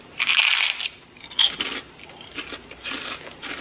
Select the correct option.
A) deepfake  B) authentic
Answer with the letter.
B